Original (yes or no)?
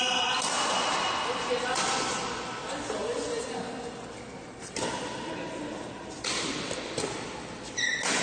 yes